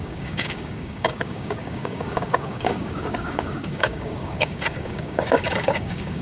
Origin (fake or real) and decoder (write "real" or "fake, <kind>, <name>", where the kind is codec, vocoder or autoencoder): fake, codec, DAC